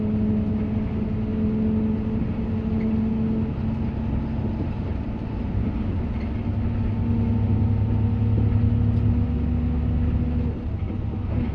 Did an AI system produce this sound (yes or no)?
no